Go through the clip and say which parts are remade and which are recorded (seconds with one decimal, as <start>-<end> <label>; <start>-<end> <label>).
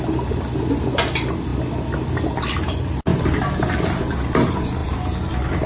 0.0-5.7 recorded